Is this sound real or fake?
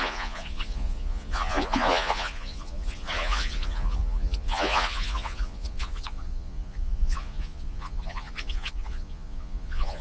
fake